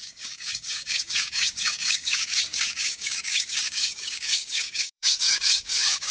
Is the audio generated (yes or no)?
yes